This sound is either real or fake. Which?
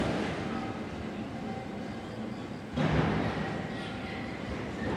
real